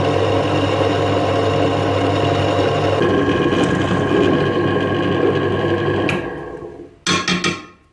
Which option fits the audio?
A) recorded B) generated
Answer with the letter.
A